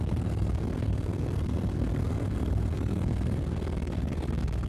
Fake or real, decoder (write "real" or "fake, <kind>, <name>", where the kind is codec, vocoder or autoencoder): fake, codec, SNAC